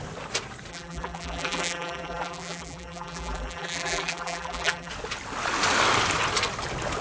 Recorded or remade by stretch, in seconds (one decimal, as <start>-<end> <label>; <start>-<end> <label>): 0.0-0.7 recorded; 0.7-4.9 remade; 4.9-7.0 recorded